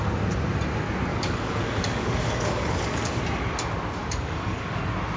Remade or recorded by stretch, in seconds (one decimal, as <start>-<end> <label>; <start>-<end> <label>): 0.0-1.1 recorded; 1.1-3.2 remade; 3.2-4.0 recorded; 4.0-4.8 remade; 4.8-5.2 recorded